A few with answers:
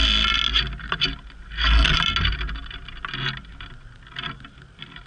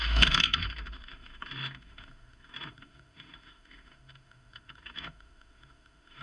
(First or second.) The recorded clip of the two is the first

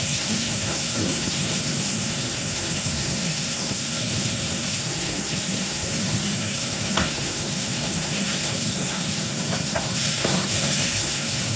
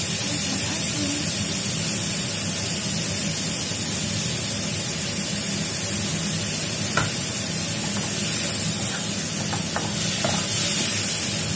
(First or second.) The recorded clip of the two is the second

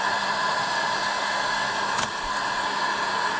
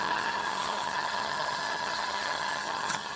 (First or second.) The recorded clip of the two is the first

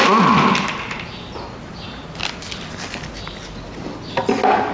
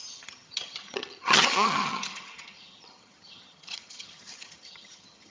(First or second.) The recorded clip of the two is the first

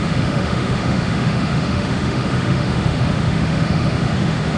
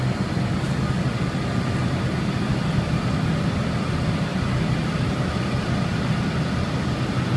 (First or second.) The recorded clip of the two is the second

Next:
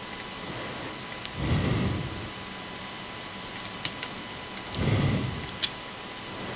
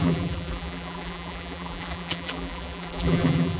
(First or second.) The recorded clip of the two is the first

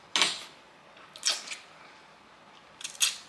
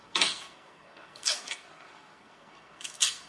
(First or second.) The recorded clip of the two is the first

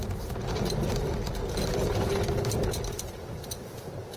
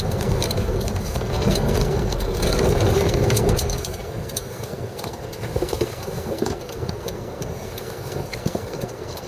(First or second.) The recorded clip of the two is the first